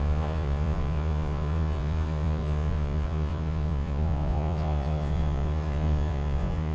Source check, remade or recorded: remade